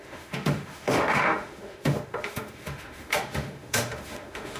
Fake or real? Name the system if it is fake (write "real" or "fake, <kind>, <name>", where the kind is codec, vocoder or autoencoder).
fake, autoencoder, DAC-VAE